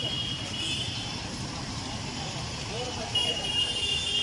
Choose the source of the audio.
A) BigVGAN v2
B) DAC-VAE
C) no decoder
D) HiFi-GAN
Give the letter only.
A